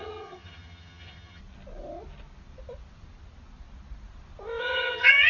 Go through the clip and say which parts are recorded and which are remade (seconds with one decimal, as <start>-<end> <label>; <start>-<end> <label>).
0.0-1.4 remade; 1.4-4.6 recorded; 4.6-5.3 remade

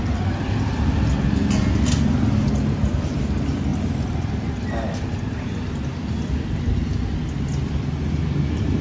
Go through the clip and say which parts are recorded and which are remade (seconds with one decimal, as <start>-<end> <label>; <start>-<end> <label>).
0.0-8.8 recorded

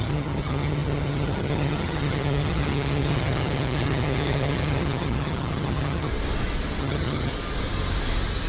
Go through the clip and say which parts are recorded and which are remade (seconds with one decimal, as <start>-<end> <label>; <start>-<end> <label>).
0.0-6.1 remade; 6.1-6.8 recorded; 6.8-7.3 remade; 7.3-8.5 recorded

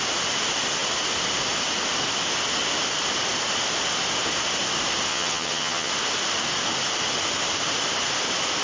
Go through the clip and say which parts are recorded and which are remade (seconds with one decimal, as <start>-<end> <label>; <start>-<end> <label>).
0.0-5.1 recorded; 5.1-5.9 remade; 5.9-8.6 recorded

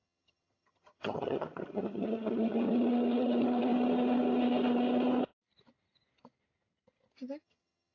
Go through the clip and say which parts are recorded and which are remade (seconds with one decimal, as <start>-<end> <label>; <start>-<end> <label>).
0.0-3.7 remade; 3.7-7.4 recorded; 7.4-7.9 remade

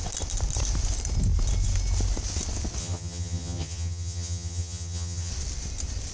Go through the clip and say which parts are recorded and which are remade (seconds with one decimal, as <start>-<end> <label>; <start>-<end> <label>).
0.0-2.8 recorded; 2.8-5.3 remade; 5.3-6.1 recorded

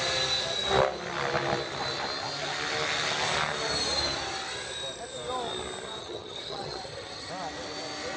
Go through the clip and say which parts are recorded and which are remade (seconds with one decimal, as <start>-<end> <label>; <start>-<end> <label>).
0.0-6.0 recorded; 6.0-7.3 remade; 7.3-8.2 recorded